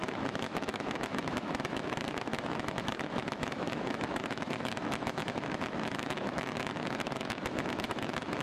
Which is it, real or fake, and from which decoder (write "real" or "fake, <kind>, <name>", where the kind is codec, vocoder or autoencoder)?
fake, autoencoder, DAC-VAE